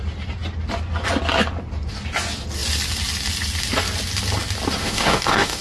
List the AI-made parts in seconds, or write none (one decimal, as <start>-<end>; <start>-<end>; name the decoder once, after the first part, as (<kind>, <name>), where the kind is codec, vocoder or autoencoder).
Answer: 4.8-5.6 (autoencoder, DAC-VAE)